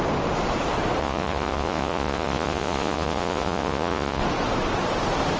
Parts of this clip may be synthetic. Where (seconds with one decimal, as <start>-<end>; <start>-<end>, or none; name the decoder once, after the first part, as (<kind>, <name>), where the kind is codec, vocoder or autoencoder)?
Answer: 1.0-4.2 (vocoder, Vocos)